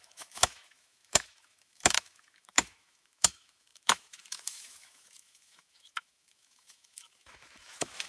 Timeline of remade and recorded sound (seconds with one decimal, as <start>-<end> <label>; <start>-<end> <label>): 0.0-8.1 remade